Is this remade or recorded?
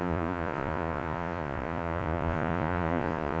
remade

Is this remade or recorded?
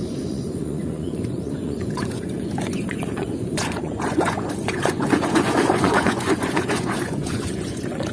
remade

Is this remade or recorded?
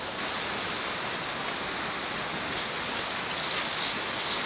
recorded